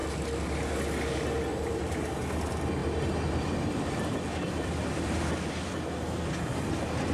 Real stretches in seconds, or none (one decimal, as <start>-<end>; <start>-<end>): 0.0-1.5; 2.4-2.8; 5.8-7.1